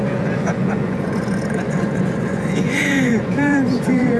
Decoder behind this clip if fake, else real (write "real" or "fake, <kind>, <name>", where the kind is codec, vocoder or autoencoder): fake, vocoder, Vocos